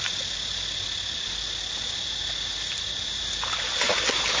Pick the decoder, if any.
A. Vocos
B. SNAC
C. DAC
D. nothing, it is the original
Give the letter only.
D